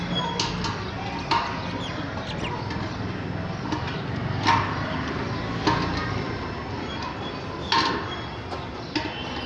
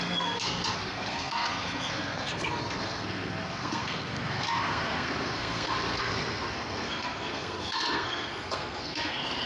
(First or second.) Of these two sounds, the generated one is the second